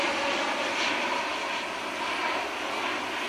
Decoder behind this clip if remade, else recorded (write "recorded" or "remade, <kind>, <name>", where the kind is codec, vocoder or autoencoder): recorded